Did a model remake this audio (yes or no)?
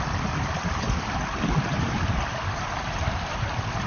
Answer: yes